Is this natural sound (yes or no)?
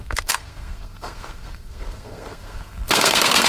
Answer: no